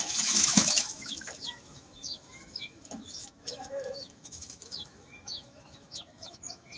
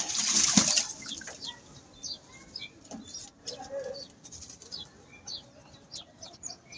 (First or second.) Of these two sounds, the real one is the second